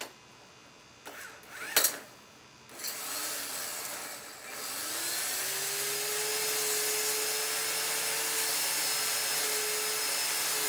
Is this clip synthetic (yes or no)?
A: no